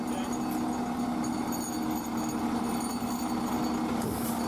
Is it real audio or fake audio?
real